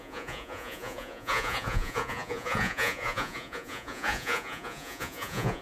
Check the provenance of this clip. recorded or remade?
remade